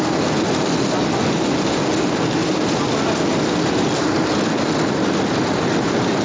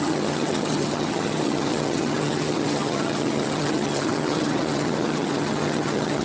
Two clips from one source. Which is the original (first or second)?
first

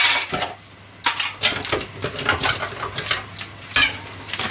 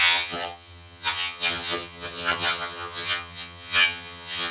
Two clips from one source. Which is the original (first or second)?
first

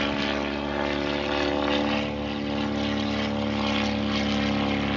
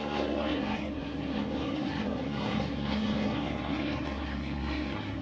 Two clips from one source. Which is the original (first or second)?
first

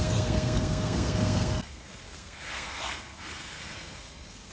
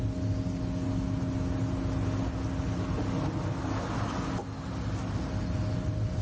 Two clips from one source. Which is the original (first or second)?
second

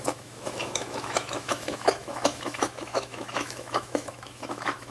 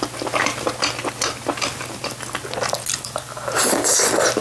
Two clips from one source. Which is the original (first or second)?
second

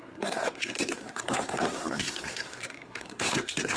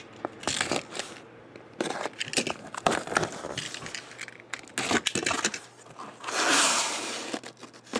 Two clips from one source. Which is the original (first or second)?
second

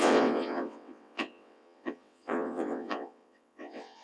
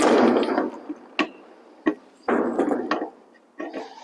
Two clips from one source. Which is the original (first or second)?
second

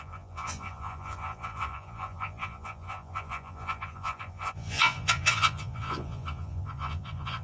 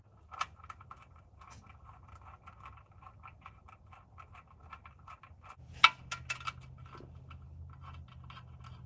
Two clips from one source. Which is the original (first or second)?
second